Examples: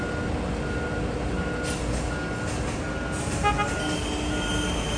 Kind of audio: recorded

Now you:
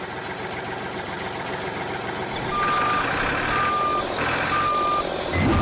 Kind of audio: recorded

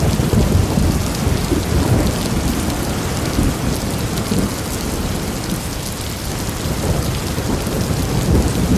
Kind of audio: recorded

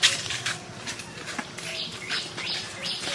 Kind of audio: remade